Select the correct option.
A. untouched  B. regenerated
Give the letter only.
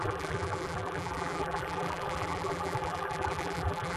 B